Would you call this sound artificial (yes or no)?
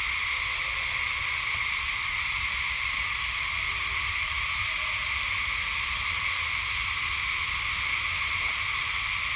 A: no